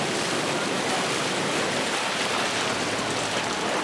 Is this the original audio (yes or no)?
yes